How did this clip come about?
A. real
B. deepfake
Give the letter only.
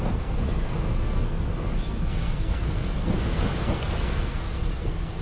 B